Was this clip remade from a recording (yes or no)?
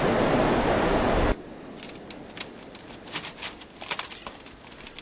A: no